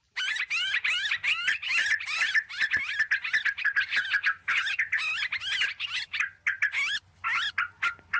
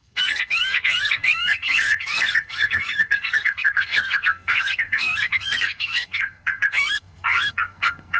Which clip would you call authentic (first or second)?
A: first